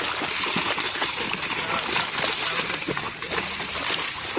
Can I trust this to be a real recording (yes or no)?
yes